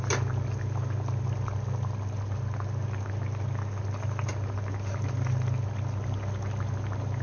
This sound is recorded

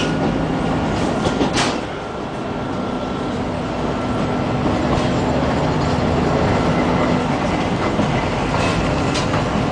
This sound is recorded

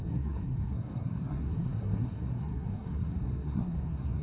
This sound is remade